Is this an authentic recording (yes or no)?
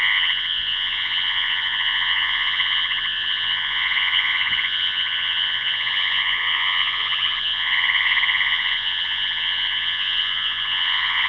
no